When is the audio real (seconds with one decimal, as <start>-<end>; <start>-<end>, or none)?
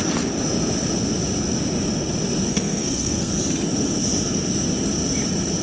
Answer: 0.0-2.5; 3.3-5.6